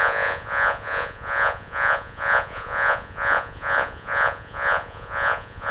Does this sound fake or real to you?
fake